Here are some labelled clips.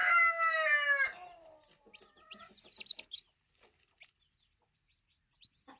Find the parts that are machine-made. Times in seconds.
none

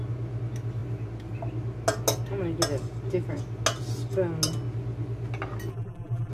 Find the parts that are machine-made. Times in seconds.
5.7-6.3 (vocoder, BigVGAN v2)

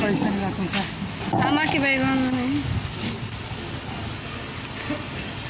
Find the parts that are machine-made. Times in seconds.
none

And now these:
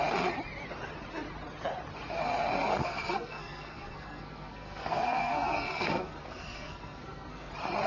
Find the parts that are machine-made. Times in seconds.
2.8-7.5 (codec, SNAC)